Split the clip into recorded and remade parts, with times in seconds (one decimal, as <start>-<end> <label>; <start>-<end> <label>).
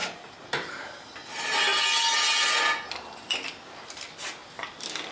0.0-5.1 recorded